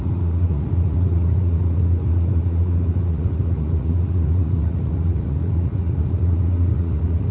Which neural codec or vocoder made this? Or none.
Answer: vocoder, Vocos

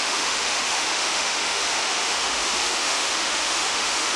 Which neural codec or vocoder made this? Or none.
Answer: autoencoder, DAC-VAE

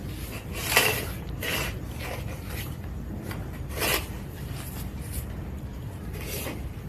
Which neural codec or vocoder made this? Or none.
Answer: vocoder, BigVGAN v2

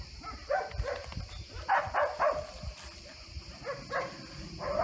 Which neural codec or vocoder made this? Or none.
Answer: none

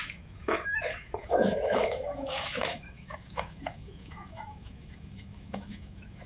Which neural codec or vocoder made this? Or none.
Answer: autoencoder, DAC-VAE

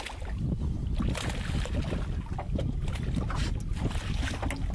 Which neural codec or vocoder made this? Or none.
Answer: none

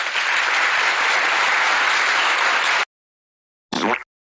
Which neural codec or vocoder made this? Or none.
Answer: none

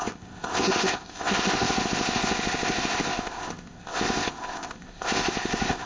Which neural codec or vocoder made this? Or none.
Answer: codec, ZipCodec